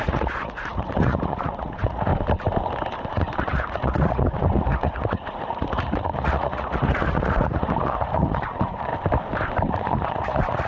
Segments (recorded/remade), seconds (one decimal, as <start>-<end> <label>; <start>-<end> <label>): 0.0-2.1 remade; 2.1-3.1 recorded; 3.1-8.9 remade; 8.9-9.7 recorded; 9.7-10.7 remade